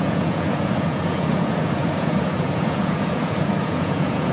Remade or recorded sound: remade